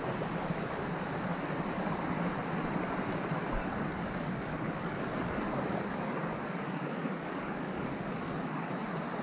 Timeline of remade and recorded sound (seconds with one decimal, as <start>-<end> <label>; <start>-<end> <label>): 0.0-3.6 recorded; 3.6-8.7 remade; 8.7-9.2 recorded